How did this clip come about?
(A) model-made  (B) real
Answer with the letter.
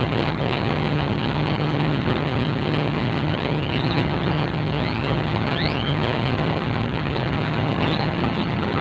A